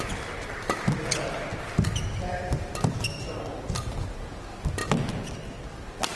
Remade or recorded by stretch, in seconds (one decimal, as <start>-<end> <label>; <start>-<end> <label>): 0.0-6.2 recorded